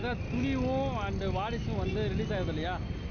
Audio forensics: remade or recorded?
recorded